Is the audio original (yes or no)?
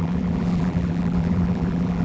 no